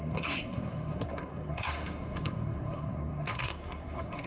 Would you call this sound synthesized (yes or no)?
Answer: yes